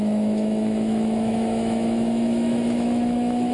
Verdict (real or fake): fake